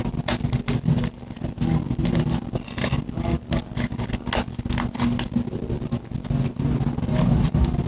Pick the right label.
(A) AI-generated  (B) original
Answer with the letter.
B